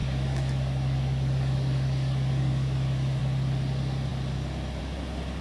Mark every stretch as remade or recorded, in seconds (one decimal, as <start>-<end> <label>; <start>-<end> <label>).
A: 0.0-3.2 remade; 3.2-5.4 recorded